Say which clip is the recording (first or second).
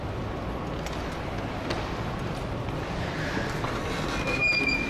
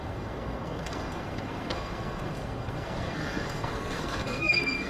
first